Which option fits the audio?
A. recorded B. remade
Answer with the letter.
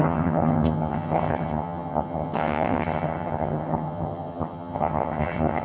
B